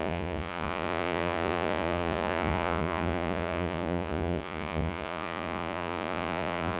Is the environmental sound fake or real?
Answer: fake